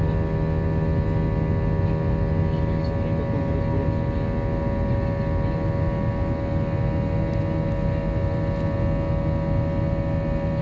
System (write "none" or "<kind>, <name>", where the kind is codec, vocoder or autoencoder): none